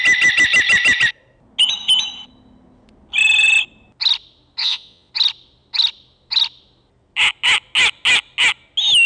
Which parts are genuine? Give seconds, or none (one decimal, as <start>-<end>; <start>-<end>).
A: 0.0-4.6; 5.1-9.1